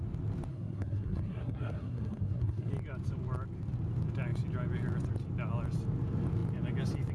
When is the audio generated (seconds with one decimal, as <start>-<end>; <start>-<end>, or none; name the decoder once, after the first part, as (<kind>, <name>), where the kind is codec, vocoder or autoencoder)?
0.5-2.7 (codec, SNAC)